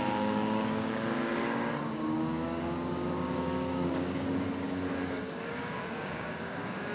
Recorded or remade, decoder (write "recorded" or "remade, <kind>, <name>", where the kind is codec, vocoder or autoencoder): remade, codec, DAC